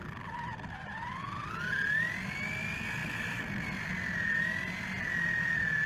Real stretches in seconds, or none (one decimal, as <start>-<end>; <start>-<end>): 0.0-5.9